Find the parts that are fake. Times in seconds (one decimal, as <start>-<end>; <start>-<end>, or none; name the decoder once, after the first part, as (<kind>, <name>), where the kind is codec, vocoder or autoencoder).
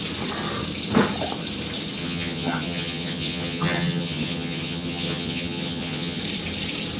2.0-6.2 (vocoder, HiFi-GAN)